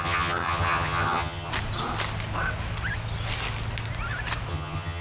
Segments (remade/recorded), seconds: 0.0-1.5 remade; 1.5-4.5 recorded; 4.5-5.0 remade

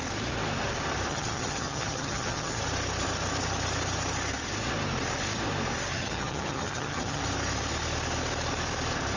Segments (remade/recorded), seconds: 0.0-1.1 recorded; 1.1-2.6 remade; 2.6-5.9 recorded; 5.9-7.2 remade; 7.2-9.2 recorded

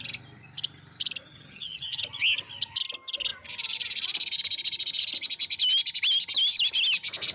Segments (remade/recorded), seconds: 0.0-1.3 recorded; 1.3-2.0 remade; 2.0-7.3 recorded

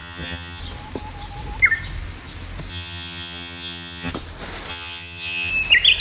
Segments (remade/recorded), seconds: 0.0-0.6 remade; 0.6-2.7 recorded; 2.7-4.1 remade; 4.1-4.7 recorded; 4.7-5.5 remade; 5.5-6.0 recorded

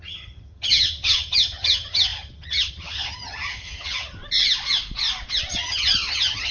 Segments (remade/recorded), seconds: 0.0-4.2 remade; 4.2-5.5 recorded; 5.5-6.5 remade

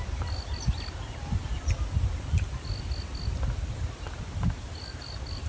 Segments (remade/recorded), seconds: 0.0-5.5 recorded

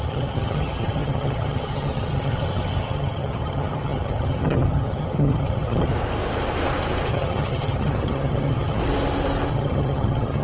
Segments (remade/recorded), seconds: 0.0-5.9 remade; 5.9-7.1 recorded; 7.1-8.8 remade; 8.8-9.5 recorded; 9.5-10.4 remade

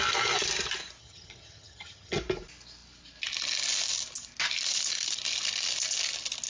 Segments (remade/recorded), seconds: 0.0-1.0 recorded; 1.0-2.2 remade; 2.2-6.5 recorded